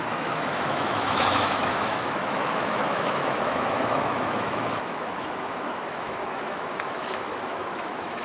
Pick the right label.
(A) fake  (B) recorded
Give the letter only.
A